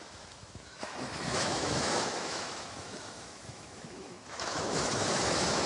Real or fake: fake